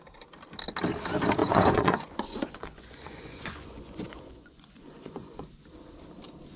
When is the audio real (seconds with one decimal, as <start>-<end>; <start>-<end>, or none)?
0.0-1.4; 5.4-6.6